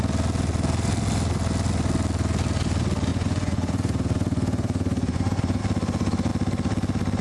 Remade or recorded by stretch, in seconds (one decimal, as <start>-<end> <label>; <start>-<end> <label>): 0.0-3.1 recorded; 3.1-5.6 remade; 5.6-7.2 recorded